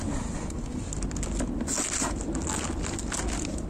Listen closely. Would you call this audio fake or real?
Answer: real